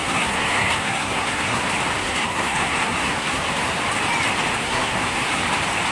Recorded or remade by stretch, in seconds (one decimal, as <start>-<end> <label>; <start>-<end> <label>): 0.0-1.6 remade; 1.6-2.0 recorded; 2.0-3.8 remade; 3.8-4.6 recorded; 4.6-5.4 remade; 5.4-5.9 recorded